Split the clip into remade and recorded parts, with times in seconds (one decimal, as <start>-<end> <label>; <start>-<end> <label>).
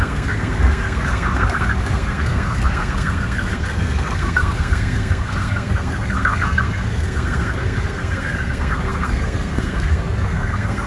0.0-10.9 remade